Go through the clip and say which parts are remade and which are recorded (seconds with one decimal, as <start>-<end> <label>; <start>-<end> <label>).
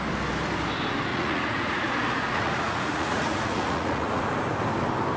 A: 0.0-1.1 recorded; 1.1-4.2 remade; 4.2-5.2 recorded